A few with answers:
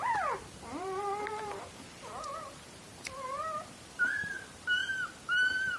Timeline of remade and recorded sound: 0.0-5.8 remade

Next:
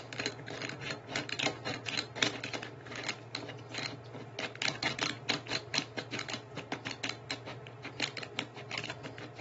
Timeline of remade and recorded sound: 0.0-7.5 recorded; 7.5-8.3 remade; 8.3-9.4 recorded

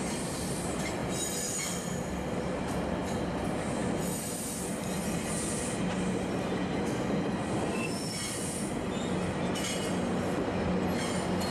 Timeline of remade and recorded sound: 0.0-11.5 recorded

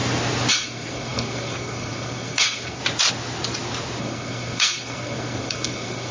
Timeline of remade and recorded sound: 0.0-0.5 recorded; 0.5-2.8 remade; 2.8-4.0 recorded; 4.0-6.1 remade

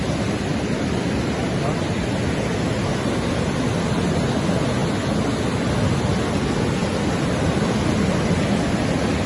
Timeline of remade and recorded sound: 0.0-9.3 recorded

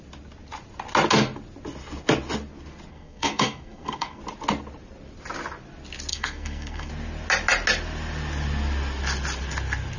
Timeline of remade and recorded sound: 0.0-2.9 recorded; 2.9-4.2 remade; 4.2-6.1 recorded; 6.1-6.9 remade; 6.9-10.0 recorded

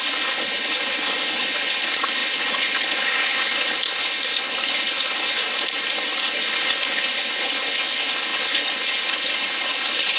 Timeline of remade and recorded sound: 0.0-5.4 remade; 5.4-6.2 recorded; 6.2-10.2 remade

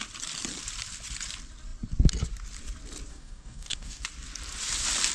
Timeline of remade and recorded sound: 0.0-3.1 recorded; 3.1-4.0 remade; 4.0-5.1 recorded